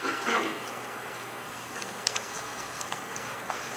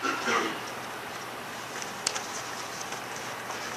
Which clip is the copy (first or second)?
first